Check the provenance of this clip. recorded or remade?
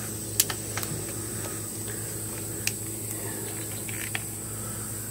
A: recorded